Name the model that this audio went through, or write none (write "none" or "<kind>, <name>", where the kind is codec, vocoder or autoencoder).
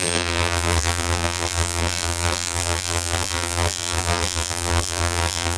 vocoder, BigVGAN v2